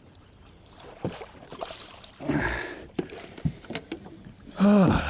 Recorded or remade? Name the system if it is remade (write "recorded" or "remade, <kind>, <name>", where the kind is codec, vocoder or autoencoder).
remade, vocoder, BigVGAN v2